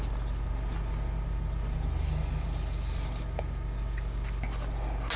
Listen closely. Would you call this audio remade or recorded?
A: recorded